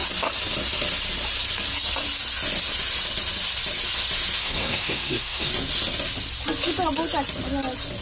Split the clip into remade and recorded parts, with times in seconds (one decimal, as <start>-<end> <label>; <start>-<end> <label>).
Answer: 0.0-4.4 recorded; 4.4-5.5 remade; 5.5-8.0 recorded